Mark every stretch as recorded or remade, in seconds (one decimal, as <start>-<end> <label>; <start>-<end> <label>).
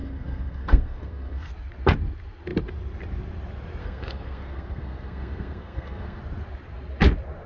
0.0-1.5 remade; 1.5-3.8 recorded; 3.8-6.2 remade; 6.2-7.5 recorded